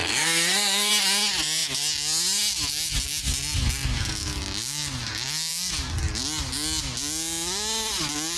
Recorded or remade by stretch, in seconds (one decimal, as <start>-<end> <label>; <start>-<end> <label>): 0.0-0.9 remade; 0.9-8.4 recorded